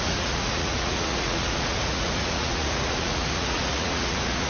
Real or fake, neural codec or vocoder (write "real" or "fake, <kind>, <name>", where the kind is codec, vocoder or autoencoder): fake, vocoder, Vocos